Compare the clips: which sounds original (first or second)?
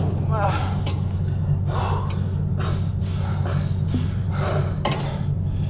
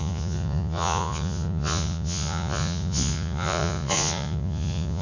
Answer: first